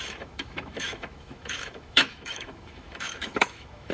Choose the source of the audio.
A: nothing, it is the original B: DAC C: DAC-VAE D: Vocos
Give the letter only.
C